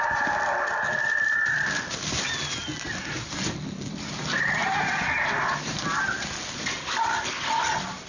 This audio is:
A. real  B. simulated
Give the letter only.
A